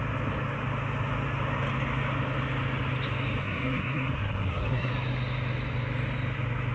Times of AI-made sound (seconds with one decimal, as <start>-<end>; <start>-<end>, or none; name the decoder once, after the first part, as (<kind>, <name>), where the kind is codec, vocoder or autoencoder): 3.4-4.9 (codec, SNAC)